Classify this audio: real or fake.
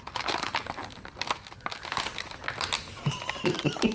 real